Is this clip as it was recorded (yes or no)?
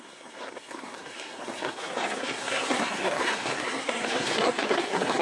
no